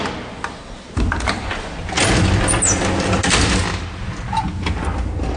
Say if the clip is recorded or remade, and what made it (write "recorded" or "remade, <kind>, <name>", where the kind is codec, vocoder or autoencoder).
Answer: recorded